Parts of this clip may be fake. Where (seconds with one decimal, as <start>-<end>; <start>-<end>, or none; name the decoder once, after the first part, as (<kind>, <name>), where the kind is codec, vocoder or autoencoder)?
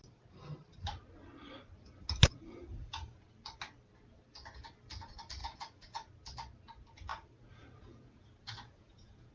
2.7-3.3 (vocoder, Vocos); 5.4-6.1; 7.1-9.3